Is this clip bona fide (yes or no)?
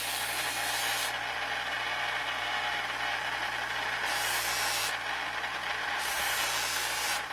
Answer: no